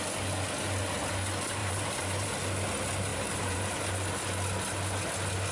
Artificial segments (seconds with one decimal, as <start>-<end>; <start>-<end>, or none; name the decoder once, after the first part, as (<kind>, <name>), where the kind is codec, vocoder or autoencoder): 1.6-2.3 (vocoder, BigVGAN v2); 3.1-3.9